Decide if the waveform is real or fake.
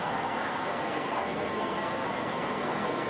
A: fake